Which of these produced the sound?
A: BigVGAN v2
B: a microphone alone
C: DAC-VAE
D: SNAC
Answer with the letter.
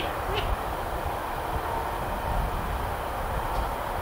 B